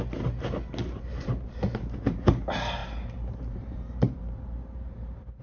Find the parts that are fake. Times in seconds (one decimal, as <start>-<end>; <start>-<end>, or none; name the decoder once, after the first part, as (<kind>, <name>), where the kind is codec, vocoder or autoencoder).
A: 0.8-2.3 (vocoder, BigVGAN v2); 2.8-5.4